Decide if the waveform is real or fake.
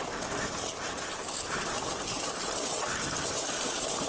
real